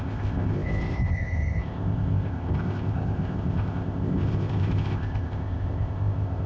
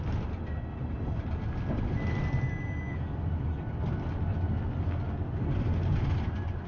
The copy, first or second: first